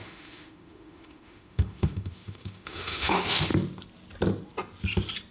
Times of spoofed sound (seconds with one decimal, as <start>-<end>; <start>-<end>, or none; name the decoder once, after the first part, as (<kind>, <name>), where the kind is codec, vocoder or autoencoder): 0.0-3.5 (autoencoder, DAC-VAE)